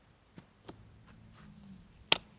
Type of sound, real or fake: real